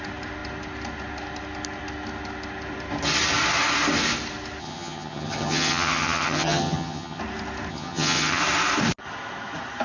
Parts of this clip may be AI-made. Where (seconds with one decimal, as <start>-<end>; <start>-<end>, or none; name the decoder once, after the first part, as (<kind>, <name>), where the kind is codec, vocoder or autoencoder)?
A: 4.6-7.2 (vocoder, HiFi-GAN); 7.7-8.4